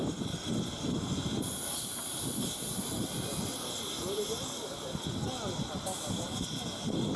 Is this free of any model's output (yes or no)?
yes